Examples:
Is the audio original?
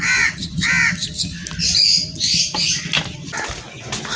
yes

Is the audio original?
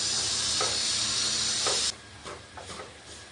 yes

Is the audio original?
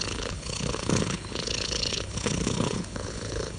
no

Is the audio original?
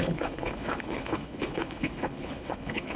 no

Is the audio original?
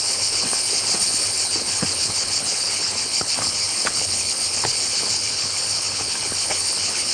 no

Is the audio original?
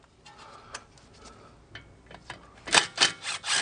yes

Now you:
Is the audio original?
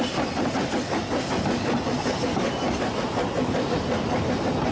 yes